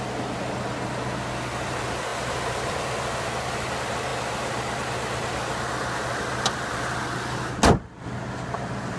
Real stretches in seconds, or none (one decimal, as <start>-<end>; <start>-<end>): 0.0-2.1; 3.4-9.0

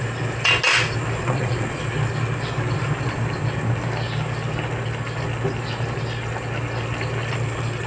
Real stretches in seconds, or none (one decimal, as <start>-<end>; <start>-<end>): 0.0-1.2; 1.8-7.9

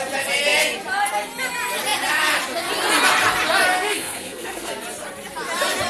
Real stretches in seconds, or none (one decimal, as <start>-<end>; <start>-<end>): 0.0-3.7; 4.7-5.9

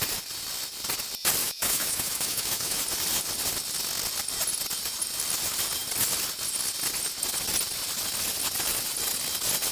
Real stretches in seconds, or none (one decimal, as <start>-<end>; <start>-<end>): 0.0-1.4; 2.8-9.7